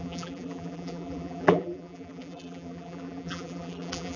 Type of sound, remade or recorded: remade